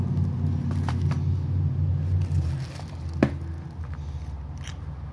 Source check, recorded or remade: recorded